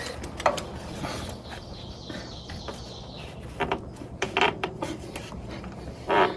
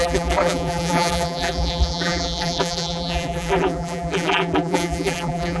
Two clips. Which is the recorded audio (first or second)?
first